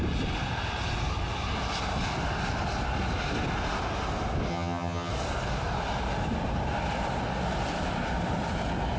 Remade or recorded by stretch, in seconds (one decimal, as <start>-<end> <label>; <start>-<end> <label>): 0.0-4.5 recorded; 4.5-5.1 remade; 5.1-9.0 recorded